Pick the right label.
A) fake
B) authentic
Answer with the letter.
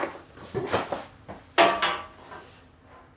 B